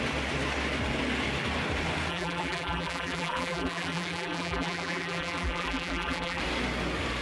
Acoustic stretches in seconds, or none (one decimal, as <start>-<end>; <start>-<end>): 0.0-2.1; 6.4-7.2